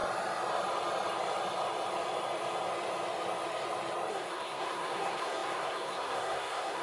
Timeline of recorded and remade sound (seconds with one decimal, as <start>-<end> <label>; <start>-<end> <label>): 0.0-4.1 recorded; 4.1-6.8 remade